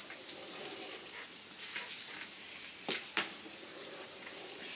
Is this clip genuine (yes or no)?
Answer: yes